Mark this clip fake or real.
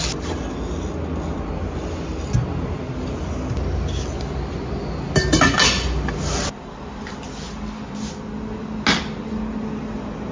real